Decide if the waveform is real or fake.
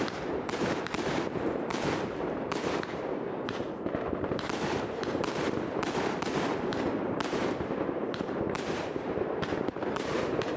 fake